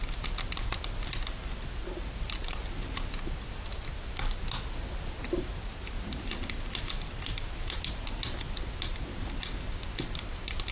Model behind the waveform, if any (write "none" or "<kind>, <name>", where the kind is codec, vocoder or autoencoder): none